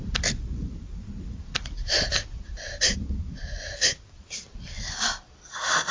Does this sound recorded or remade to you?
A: recorded